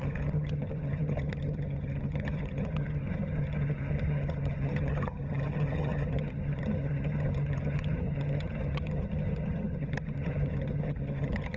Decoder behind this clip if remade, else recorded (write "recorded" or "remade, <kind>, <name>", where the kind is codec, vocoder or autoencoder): remade, vocoder, HiFi-GAN